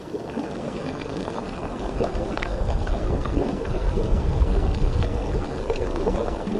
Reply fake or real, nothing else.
fake